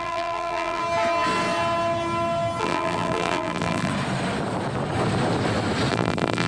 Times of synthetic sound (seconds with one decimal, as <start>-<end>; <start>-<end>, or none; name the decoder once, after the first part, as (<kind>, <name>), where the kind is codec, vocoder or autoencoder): 0.0-0.8 (vocoder, BigVGAN v2); 2.6-3.9; 5.9-6.5